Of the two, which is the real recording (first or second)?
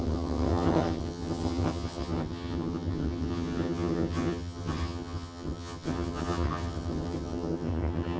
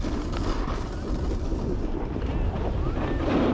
second